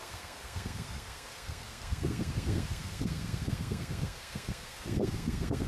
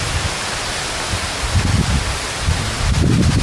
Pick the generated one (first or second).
first